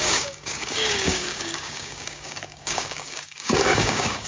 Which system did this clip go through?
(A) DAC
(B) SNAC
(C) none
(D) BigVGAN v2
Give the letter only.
A